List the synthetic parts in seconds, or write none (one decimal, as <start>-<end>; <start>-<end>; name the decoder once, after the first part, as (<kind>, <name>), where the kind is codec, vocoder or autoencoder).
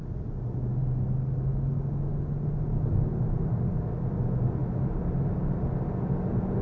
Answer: none